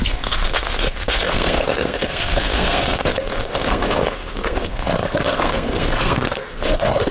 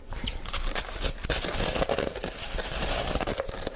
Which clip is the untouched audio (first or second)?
second